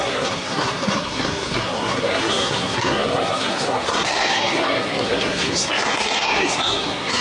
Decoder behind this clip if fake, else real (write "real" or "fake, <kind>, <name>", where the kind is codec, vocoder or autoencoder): fake, codec, SNAC